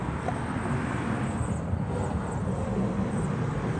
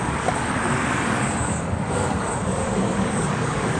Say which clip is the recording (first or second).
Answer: first